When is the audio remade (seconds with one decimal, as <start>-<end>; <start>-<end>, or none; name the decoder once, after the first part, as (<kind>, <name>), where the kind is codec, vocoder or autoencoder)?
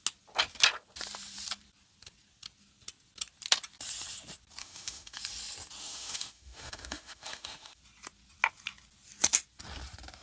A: 4.6-5.2 (autoencoder, DAC-VAE); 5.8-7.8